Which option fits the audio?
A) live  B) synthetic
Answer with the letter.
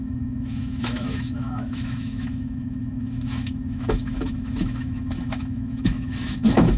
B